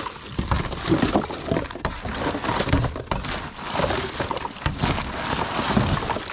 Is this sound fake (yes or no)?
no